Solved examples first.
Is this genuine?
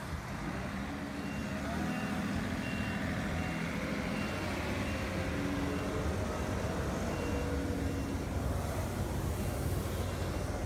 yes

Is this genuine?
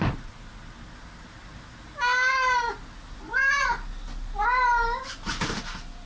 yes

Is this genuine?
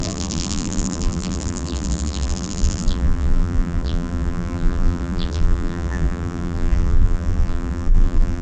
no